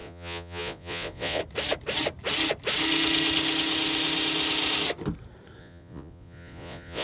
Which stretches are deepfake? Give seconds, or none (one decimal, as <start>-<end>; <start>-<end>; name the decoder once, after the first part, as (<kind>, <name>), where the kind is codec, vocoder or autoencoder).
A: 0.0-1.4 (vocoder, Vocos); 5.6-7.0